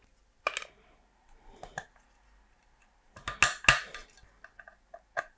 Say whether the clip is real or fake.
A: real